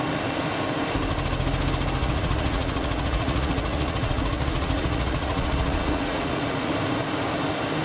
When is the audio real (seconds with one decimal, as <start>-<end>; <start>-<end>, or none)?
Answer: 0.0-2.0; 6.7-7.8